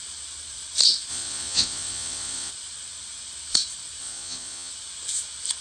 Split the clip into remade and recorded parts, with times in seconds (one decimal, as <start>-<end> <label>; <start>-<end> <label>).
0.0-1.1 recorded; 1.1-2.5 remade; 2.5-4.0 recorded; 4.0-4.7 remade; 4.7-5.6 recorded